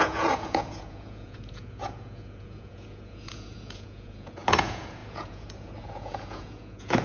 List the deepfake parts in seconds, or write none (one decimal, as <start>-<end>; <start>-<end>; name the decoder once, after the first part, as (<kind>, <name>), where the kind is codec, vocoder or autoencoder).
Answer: 0.0-7.0 (vocoder, Vocos)